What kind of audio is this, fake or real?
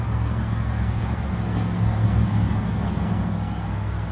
fake